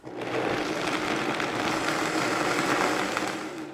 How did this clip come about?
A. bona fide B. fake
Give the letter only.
A